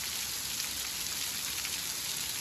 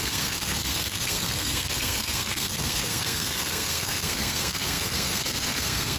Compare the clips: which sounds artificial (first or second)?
second